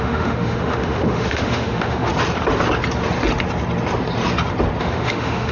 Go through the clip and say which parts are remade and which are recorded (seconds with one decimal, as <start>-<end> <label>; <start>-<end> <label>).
0.0-2.1 remade; 2.1-4.8 recorded; 4.8-5.5 remade